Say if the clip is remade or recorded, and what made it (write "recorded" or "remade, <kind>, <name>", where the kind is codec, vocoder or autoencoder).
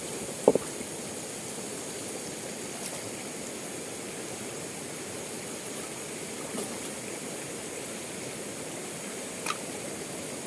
recorded